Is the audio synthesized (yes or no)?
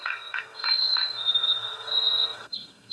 yes